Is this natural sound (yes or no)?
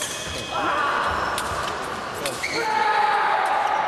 yes